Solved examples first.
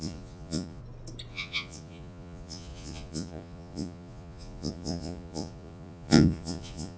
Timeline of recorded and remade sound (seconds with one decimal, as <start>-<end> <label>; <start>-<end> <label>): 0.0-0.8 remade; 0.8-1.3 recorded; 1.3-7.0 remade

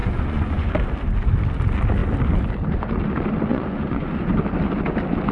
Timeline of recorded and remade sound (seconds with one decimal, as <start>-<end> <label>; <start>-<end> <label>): 0.0-0.7 remade; 0.7-3.5 recorded; 3.5-4.3 remade; 4.3-5.3 recorded

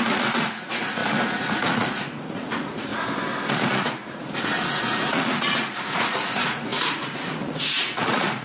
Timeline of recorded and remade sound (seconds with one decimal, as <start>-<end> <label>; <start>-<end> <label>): 0.0-2.9 remade; 2.9-3.5 recorded; 3.5-8.4 remade